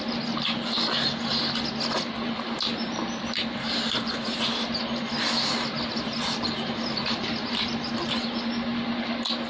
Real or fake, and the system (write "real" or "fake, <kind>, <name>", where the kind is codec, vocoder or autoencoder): real